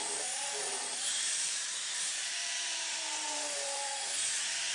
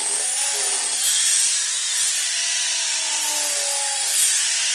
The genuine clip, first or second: second